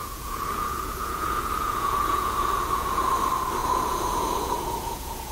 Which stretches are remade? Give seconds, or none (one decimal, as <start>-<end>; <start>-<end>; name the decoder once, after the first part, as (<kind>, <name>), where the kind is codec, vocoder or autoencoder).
0.0-3.0 (vocoder, Vocos); 3.6-5.3